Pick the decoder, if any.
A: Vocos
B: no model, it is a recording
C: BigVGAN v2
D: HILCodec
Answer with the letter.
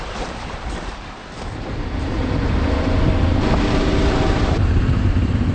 C